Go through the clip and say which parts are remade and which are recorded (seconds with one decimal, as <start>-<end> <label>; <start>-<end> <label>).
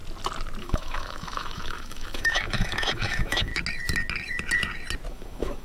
0.0-0.6 recorded; 0.6-3.5 remade; 3.5-5.1 recorded; 5.1-5.6 remade